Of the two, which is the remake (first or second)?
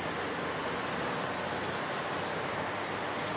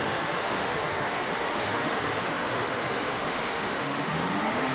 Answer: second